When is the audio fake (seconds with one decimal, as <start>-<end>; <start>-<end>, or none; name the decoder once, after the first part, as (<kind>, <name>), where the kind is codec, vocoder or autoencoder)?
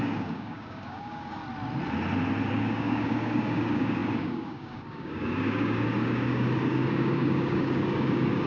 0.0-1.4 (codec, DAC); 2.5-8.5